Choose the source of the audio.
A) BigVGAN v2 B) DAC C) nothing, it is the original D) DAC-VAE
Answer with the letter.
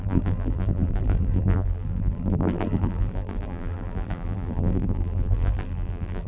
A